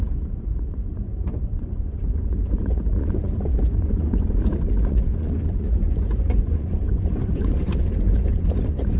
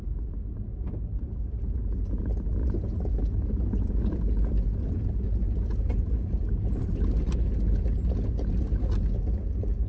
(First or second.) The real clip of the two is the second